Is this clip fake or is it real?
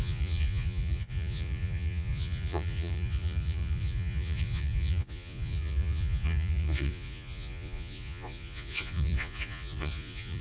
fake